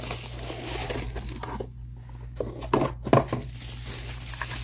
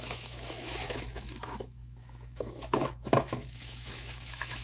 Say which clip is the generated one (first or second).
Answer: second